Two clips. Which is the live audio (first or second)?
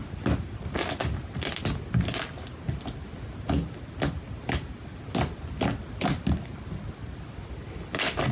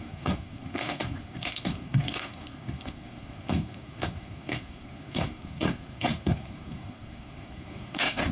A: first